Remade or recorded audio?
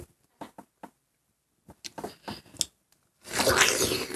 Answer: recorded